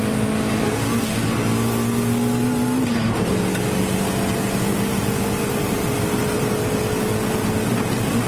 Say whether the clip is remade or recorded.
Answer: recorded